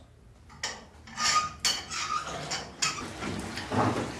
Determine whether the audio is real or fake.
real